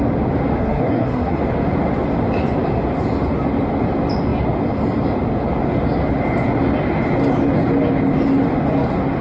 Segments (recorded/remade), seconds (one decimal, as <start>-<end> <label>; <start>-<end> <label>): 0.0-0.6 recorded; 0.6-1.4 remade; 1.4-9.2 recorded